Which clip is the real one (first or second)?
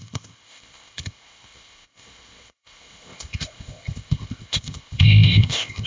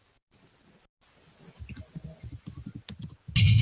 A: second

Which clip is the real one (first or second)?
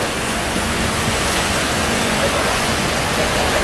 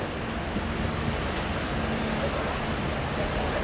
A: second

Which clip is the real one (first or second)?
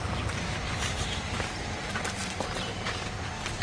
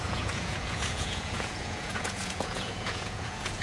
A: first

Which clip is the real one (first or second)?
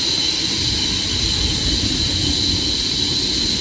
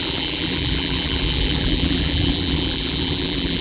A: first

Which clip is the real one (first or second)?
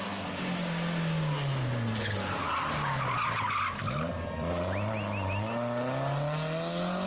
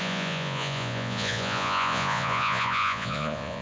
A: first